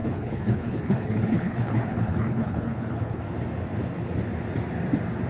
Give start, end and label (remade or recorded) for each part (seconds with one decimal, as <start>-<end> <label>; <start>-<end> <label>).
0.0-3.2 remade; 3.2-5.3 recorded